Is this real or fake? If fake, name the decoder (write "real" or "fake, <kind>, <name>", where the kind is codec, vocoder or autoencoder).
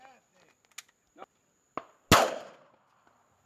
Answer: real